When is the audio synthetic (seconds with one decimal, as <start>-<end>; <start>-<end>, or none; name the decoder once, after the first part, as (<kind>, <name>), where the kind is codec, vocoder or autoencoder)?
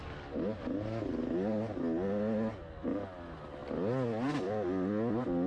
none